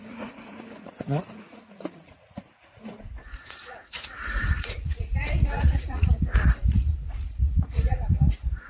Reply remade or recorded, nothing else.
remade